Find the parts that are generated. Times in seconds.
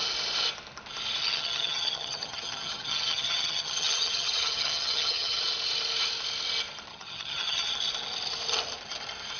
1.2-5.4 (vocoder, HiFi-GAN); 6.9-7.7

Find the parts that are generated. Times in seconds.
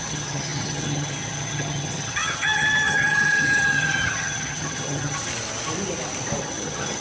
0.0-5.3 (vocoder, HiFi-GAN); 6.4-7.0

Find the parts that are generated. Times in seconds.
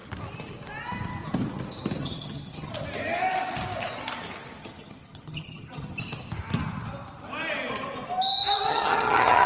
2.0-2.7 (vocoder, HiFi-GAN); 4.6-6.0; 8.7-9.5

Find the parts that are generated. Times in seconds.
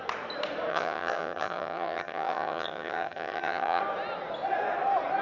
0.7-3.8 (vocoder, HiFi-GAN)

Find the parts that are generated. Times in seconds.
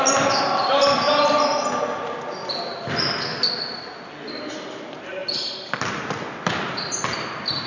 none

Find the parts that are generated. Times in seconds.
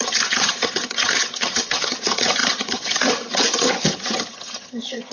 0.0-5.1 (vocoder, HiFi-GAN)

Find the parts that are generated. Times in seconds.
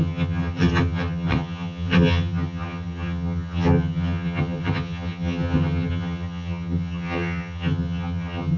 0.0-8.6 (vocoder, HiFi-GAN)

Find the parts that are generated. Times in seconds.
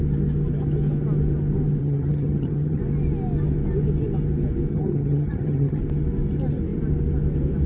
1.8-2.8 (vocoder, HiFi-GAN); 4.7-5.8